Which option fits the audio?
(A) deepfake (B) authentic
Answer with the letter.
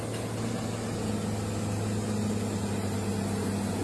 B